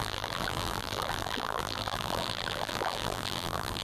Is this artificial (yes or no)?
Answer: yes